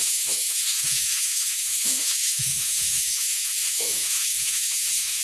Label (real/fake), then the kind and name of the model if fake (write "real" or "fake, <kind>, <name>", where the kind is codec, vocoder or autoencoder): fake, autoencoder, DAC-VAE